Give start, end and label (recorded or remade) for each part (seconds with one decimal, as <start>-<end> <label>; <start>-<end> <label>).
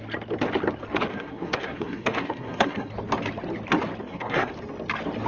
0.0-1.1 recorded; 1.1-2.9 remade; 2.9-4.0 recorded; 4.0-4.5 remade; 4.5-5.3 recorded